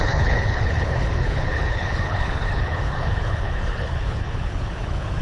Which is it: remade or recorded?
remade